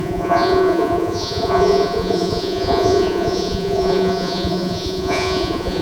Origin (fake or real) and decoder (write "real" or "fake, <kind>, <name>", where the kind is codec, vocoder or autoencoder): fake, vocoder, Vocos